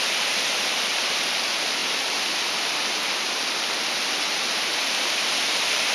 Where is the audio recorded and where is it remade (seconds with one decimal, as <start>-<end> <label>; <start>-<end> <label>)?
0.0-5.9 recorded